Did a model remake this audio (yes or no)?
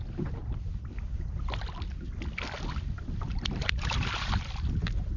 no